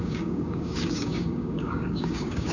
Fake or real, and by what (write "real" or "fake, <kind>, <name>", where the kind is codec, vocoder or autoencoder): fake, codec, DAC